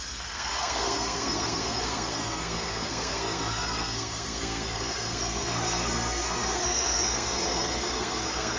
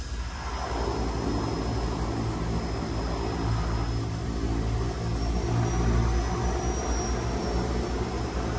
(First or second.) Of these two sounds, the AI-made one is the first